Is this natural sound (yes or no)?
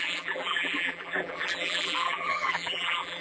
no